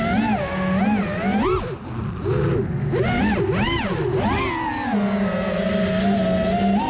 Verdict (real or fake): real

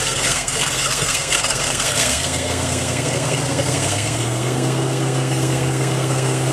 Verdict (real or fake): fake